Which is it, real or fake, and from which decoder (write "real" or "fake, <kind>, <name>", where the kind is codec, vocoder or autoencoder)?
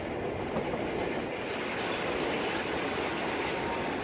real